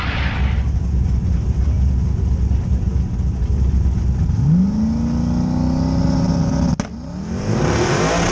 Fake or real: real